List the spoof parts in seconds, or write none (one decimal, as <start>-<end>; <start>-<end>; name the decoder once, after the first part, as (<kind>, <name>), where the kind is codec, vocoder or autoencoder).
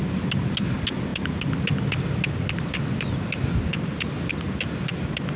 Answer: none